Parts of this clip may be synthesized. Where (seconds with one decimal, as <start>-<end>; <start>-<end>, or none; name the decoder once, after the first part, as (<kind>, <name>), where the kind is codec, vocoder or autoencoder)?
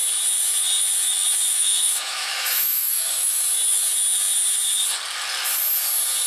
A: 1.5-3.4 (autoencoder, DAC-VAE)